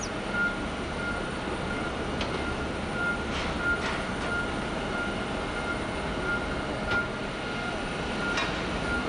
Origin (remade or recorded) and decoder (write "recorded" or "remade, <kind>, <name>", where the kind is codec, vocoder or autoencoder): recorded